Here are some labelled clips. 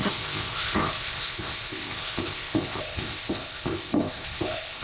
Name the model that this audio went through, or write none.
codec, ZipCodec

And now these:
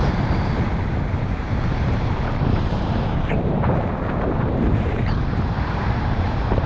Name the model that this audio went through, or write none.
vocoder, BigVGAN v2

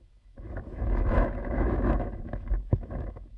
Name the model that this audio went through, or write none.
autoencoder, DAC-VAE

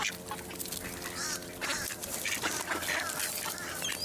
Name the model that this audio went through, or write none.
none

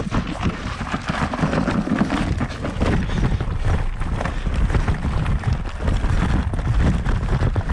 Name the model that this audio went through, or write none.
none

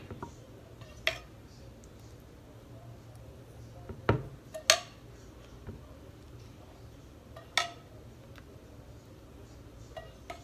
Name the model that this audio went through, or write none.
none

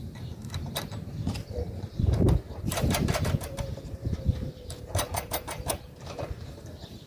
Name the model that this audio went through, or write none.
vocoder, BigVGAN v2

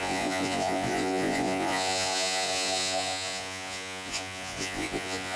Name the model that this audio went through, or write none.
vocoder, Vocos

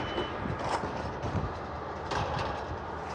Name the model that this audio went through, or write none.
vocoder, BigVGAN v2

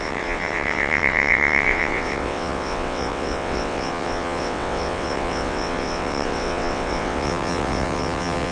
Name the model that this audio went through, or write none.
vocoder, WaveNeXt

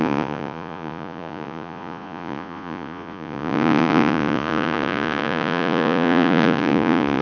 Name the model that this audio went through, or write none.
vocoder, Vocos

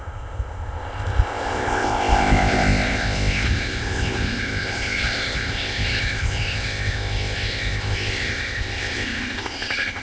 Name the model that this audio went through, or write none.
codec, ZipCodec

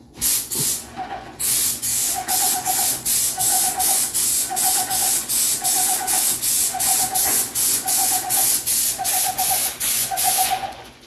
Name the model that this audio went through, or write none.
vocoder, Vocos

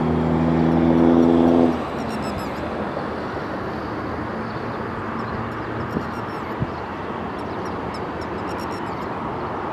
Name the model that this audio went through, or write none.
none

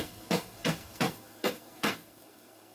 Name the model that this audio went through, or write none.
codec, SNAC